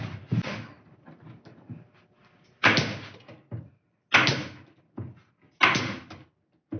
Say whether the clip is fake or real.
real